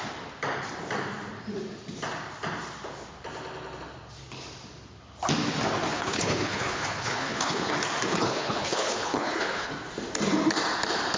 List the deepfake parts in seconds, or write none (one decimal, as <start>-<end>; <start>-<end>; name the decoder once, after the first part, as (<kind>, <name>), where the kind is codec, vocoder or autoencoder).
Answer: 5.9-7.7 (codec, HILCodec); 8.1-9.7